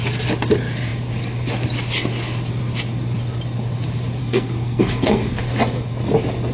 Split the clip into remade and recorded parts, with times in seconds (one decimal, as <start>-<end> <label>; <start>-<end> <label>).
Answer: 0.0-4.2 recorded; 4.2-5.4 remade; 5.4-6.5 recorded